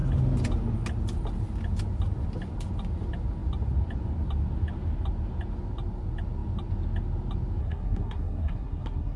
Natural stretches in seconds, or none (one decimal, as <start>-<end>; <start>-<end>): 0.0-7.6